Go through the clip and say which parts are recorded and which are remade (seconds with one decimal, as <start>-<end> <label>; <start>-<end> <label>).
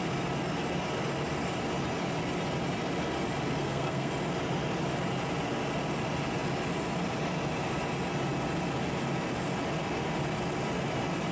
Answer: 0.0-3.6 recorded; 3.6-4.1 remade; 4.1-11.3 recorded